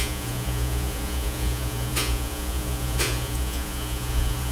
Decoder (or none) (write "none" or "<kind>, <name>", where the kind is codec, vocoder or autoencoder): vocoder, Vocos